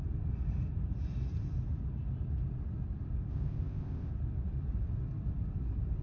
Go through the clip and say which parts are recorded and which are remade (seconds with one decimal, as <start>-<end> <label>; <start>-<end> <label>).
0.0-3.3 recorded; 3.3-4.1 remade; 4.1-6.0 recorded